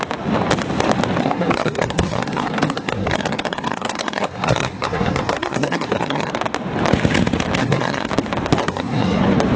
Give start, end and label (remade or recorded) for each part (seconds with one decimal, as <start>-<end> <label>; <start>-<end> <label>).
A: 0.0-1.2 recorded; 1.2-6.3 remade; 6.3-7.6 recorded; 7.6-8.1 remade; 8.1-8.6 recorded; 8.6-9.2 remade; 9.2-9.6 recorded